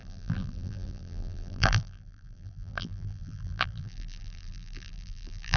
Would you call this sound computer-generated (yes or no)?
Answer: yes